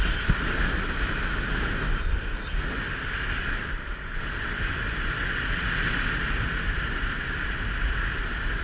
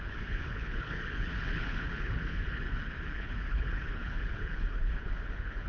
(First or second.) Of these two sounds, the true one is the first